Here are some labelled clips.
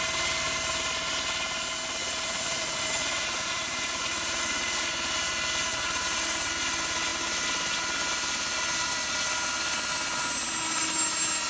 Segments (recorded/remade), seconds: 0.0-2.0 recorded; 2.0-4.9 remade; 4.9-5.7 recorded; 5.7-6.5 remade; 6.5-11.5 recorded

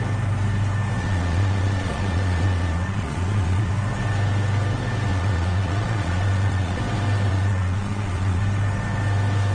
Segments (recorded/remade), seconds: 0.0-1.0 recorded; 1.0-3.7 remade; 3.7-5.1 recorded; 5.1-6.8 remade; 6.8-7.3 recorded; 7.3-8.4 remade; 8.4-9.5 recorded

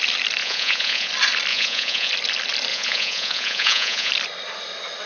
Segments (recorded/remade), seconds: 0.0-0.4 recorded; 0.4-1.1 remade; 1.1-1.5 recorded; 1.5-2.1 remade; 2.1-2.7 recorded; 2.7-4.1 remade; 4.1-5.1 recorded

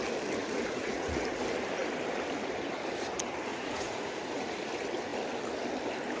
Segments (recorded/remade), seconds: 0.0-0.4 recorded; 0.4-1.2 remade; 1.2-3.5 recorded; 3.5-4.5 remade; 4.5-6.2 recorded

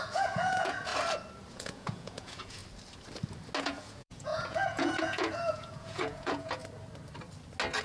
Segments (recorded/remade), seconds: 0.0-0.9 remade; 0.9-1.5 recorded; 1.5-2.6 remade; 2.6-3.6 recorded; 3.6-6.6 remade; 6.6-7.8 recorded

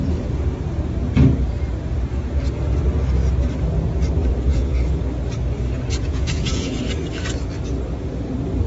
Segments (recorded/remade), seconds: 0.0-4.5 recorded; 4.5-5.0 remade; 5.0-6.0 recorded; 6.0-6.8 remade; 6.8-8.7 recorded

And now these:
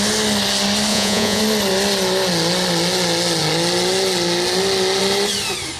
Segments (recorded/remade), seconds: 0.0-0.9 recorded; 0.9-1.4 remade; 1.4-5.8 recorded